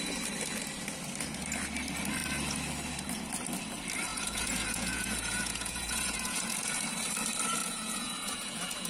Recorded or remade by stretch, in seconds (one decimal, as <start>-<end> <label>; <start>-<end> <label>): 0.0-4.1 recorded; 4.1-6.7 remade; 6.7-7.6 recorded; 7.6-8.9 remade